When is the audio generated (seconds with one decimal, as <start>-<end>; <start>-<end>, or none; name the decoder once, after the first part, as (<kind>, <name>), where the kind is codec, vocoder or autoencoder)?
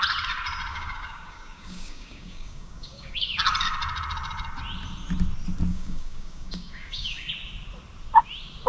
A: 0.7-3.3 (codec, DAC); 5.7-7.3